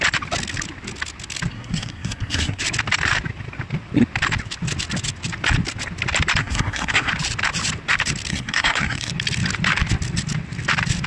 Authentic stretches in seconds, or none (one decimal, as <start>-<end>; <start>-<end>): 0.0-1.5; 2.6-6.4; 7.1-8.3; 9.1-11.1